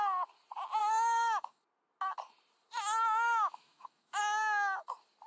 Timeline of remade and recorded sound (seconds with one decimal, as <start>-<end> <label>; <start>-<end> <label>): 0.0-0.8 recorded; 0.8-1.6 remade; 1.6-3.0 recorded; 3.0-4.2 remade; 4.2-5.3 recorded